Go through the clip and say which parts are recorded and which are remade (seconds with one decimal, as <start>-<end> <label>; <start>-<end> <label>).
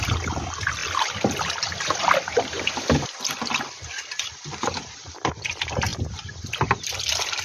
0.0-0.8 recorded; 0.8-2.6 remade; 2.6-7.4 recorded